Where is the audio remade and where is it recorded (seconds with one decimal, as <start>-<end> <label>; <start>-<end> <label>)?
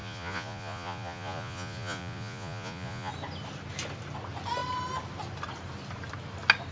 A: 0.0-3.1 remade; 3.1-6.7 recorded